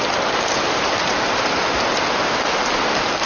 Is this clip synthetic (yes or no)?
no